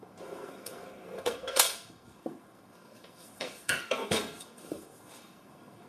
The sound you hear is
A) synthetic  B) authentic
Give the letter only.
A